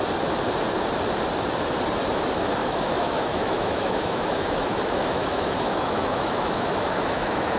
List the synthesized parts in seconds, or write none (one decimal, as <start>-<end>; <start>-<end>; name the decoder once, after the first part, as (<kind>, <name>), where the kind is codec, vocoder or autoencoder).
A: 2.6-7.6 (autoencoder, DAC-VAE)